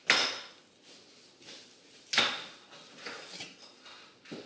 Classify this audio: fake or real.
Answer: real